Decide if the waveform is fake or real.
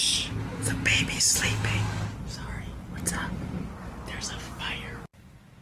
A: real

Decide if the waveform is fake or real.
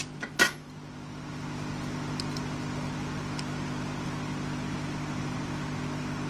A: real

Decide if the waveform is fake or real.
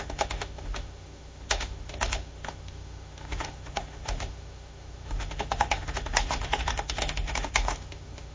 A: fake